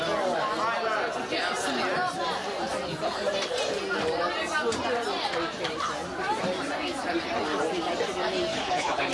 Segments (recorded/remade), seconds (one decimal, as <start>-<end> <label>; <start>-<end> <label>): 0.0-8.5 recorded; 8.5-9.1 remade